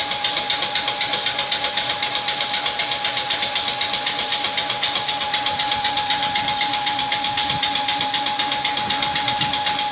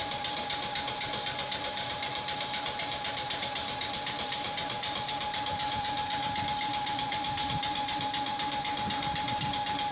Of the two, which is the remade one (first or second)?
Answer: second